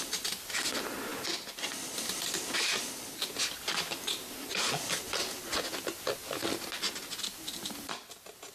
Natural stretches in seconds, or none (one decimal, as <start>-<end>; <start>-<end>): 0.0-8.5